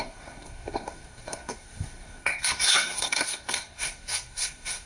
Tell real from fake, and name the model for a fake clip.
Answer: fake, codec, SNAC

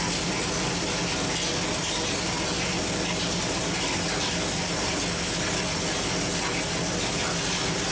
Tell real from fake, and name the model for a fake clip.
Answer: real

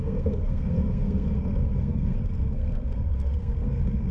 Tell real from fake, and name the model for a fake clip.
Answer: fake, codec, SNAC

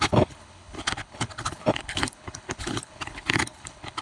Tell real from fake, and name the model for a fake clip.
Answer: fake, codec, HILCodec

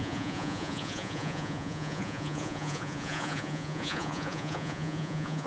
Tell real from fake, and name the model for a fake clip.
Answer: fake, vocoder, Vocos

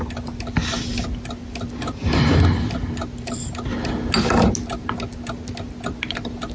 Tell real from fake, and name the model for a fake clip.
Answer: real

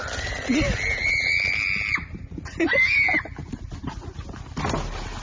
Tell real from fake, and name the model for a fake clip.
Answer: real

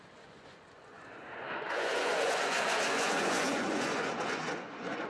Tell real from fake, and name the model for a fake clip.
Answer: fake, vocoder, Vocos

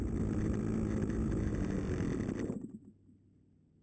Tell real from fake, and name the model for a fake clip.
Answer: real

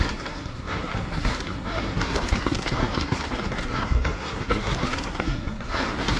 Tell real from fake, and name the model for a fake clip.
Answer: fake, codec, SNAC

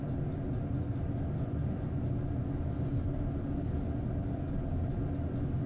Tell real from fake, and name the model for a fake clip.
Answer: real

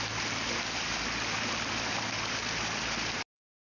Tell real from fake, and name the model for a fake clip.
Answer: real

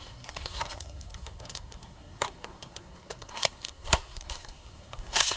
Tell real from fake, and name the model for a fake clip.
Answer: fake, codec, SNAC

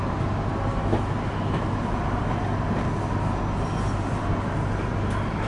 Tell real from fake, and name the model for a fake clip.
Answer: real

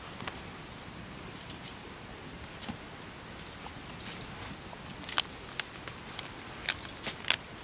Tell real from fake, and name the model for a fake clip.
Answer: real